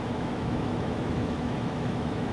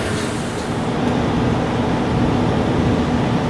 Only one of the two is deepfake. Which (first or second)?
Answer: first